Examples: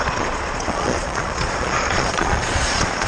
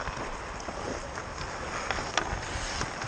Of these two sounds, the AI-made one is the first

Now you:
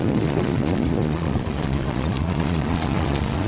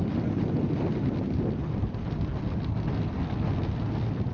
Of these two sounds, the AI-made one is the first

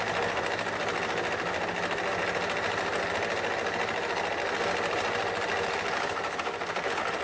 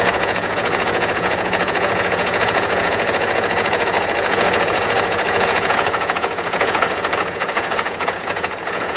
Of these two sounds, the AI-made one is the second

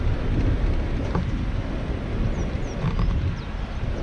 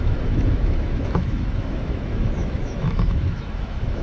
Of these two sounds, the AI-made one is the second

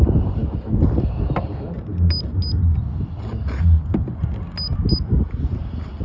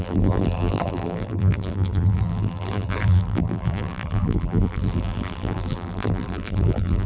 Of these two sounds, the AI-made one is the second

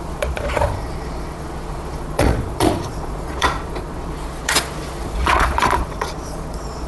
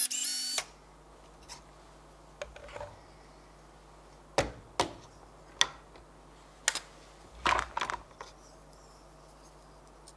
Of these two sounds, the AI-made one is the first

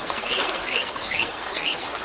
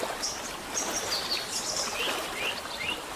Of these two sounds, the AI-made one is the first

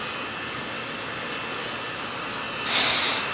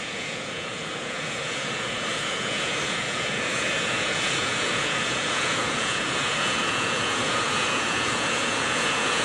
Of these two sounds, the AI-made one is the second